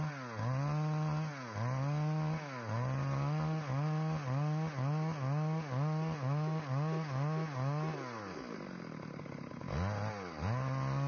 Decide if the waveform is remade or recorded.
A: recorded